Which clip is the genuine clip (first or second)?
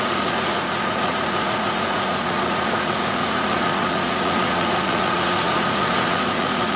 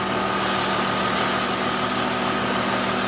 second